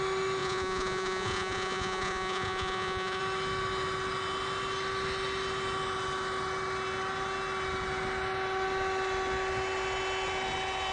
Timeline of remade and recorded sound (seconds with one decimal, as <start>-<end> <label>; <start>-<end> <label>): 0.0-0.4 recorded; 0.4-3.2 remade; 3.2-10.9 recorded